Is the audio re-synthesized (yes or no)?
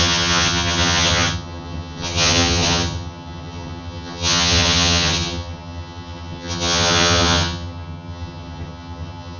yes